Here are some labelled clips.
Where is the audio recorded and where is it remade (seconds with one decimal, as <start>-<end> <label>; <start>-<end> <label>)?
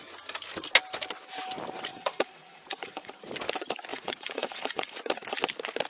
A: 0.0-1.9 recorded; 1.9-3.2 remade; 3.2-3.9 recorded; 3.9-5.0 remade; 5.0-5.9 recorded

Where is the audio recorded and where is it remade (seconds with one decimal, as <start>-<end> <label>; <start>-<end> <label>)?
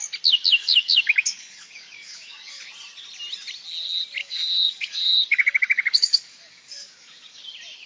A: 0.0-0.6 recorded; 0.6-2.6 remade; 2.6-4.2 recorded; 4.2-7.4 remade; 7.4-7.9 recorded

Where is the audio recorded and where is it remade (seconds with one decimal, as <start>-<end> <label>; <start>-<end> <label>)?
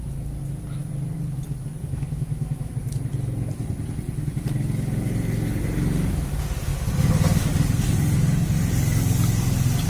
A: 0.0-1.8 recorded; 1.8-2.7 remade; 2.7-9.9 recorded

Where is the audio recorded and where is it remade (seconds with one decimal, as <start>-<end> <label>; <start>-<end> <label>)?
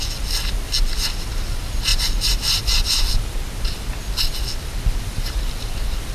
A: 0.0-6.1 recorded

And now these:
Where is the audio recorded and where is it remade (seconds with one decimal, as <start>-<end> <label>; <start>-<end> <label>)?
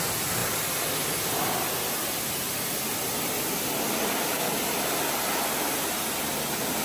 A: 0.0-6.8 recorded